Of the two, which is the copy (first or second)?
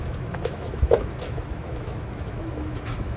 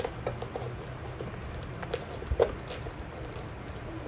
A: first